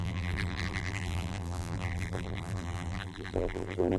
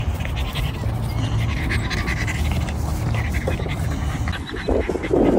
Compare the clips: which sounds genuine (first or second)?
second